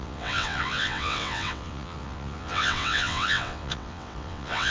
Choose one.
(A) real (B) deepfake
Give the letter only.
B